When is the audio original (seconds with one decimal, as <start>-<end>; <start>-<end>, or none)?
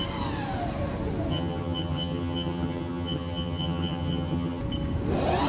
0.0-1.3; 4.6-5.5